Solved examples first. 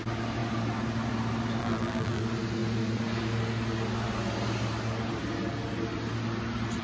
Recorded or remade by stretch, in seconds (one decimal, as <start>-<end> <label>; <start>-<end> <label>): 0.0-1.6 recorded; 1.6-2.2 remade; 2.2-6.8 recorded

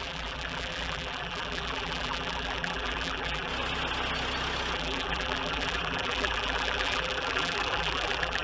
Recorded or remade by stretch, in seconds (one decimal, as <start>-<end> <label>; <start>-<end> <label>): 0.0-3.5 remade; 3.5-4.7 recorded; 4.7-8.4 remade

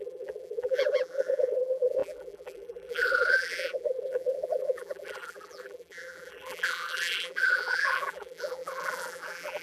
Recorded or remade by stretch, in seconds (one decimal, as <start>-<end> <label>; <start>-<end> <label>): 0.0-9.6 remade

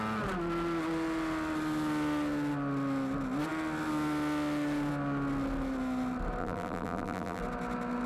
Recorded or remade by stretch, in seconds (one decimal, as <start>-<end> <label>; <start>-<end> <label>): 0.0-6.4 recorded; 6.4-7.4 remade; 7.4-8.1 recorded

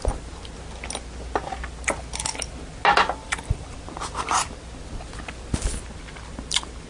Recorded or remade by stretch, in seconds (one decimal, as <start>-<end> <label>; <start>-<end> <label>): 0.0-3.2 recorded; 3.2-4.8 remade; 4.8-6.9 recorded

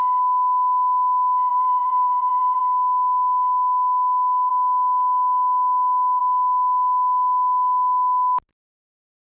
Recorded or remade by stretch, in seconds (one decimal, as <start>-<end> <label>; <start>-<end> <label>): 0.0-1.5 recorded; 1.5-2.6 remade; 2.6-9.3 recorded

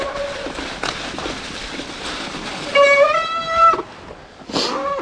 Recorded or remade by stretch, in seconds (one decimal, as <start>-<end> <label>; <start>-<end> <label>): 0.0-2.7 recorded; 2.7-3.7 remade; 3.7-5.0 recorded